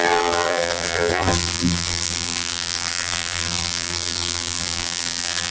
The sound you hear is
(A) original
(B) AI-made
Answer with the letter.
B